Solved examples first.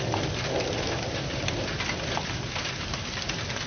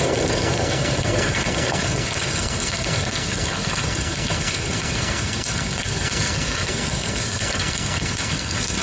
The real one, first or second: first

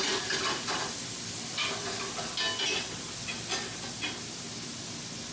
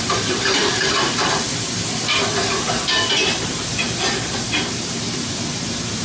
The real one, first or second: first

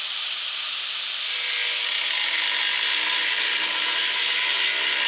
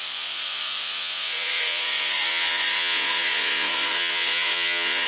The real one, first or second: first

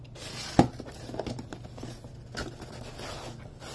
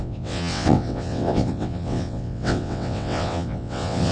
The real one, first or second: first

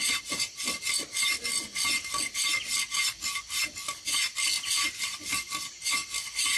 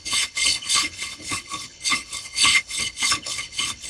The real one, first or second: first